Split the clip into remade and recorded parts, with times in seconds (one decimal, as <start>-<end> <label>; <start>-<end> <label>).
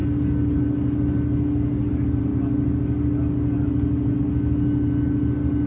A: 0.0-5.7 recorded